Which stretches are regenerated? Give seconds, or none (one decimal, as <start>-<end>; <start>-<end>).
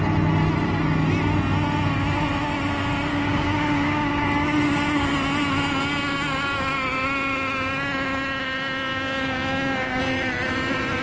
3.1-4.2; 8.9-10.0